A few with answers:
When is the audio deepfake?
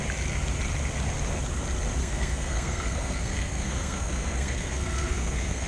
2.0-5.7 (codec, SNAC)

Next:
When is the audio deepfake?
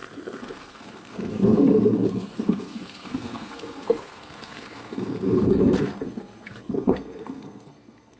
0.0-8.2 (codec, SNAC)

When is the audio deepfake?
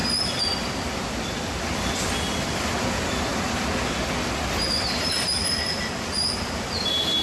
none